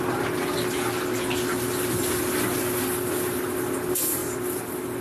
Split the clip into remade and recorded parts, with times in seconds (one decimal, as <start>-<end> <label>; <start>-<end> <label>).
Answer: 0.0-5.0 recorded